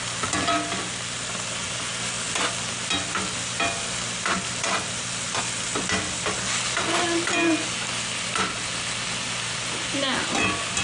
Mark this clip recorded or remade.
recorded